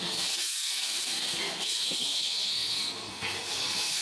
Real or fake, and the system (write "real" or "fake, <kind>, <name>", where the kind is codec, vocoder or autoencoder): fake, codec, SNAC